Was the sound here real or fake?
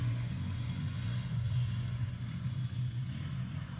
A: fake